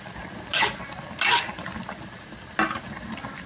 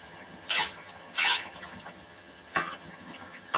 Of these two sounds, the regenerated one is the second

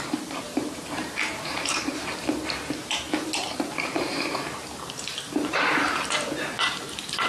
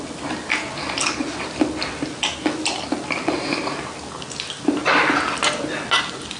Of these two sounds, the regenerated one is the first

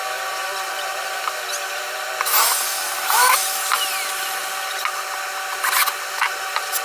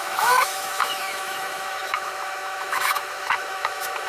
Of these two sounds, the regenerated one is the second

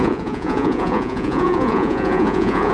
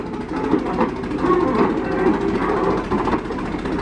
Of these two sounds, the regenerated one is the first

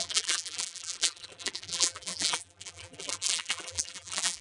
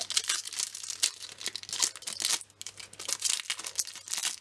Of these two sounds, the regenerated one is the first